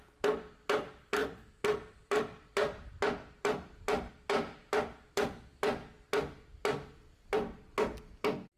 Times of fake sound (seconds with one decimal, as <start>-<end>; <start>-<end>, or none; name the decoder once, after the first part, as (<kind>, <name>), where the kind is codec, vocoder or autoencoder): 1.2-4.1 (vocoder, BigVGAN v2)